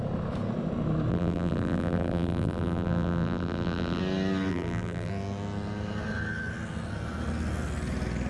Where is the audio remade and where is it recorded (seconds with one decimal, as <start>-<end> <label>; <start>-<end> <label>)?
0.0-1.1 recorded; 1.1-4.0 remade; 4.0-4.5 recorded; 4.5-5.1 remade; 5.1-8.3 recorded